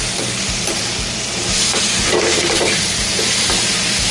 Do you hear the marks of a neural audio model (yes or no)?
yes